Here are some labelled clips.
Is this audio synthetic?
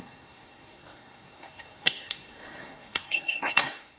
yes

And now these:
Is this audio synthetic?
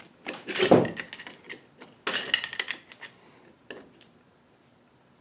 no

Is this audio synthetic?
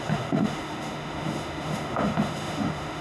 yes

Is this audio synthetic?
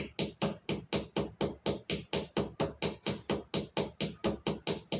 no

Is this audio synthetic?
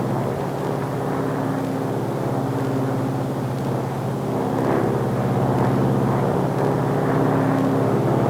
no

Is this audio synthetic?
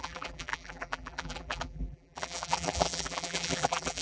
yes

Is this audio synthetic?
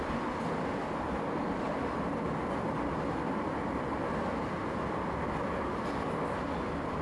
no